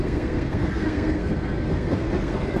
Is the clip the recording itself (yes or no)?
no